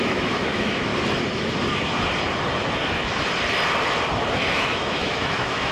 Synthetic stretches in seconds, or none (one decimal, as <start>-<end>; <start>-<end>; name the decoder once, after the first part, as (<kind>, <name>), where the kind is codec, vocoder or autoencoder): 0.0-0.9 (autoencoder, DAC-VAE); 4.3-5.7